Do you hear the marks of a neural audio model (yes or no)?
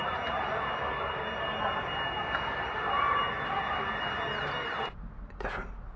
no